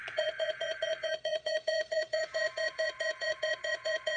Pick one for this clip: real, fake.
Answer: fake